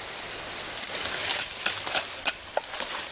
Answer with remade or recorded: recorded